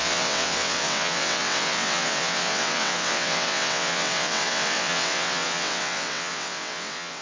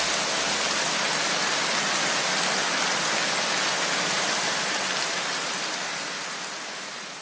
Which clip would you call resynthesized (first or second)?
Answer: first